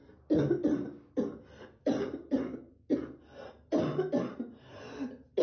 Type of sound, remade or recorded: recorded